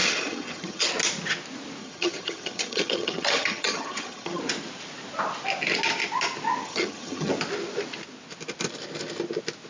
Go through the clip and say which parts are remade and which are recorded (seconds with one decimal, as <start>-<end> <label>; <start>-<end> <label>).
0.0-0.9 remade; 0.9-1.8 recorded; 1.8-4.4 remade; 4.4-6.6 recorded; 6.6-7.3 remade; 7.3-9.7 recorded